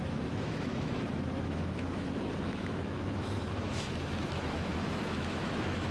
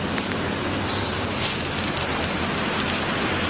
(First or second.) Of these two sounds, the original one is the second